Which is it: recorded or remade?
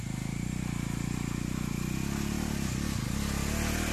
recorded